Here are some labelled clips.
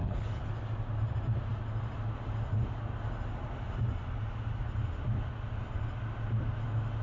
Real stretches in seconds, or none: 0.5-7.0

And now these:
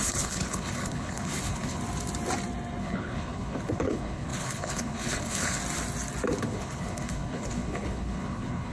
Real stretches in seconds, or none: 1.8-2.8; 5.6-6.4

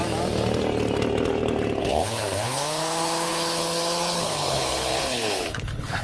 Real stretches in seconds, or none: 0.0-1.8

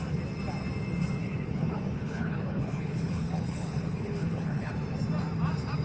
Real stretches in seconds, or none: 0.0-1.2; 4.7-5.8